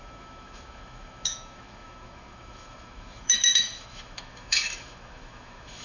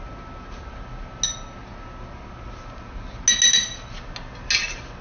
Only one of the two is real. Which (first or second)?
second